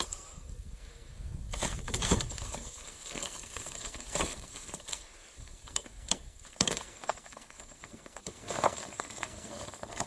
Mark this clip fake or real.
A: fake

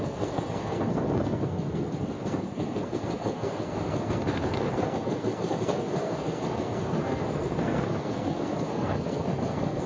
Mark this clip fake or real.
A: fake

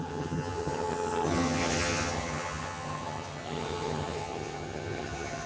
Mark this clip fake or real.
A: fake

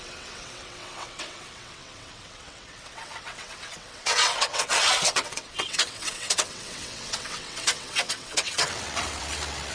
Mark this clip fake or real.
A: fake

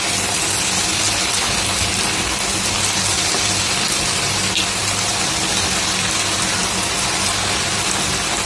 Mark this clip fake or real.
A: real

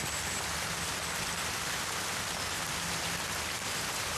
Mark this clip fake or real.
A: real